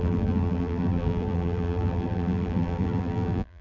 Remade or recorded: remade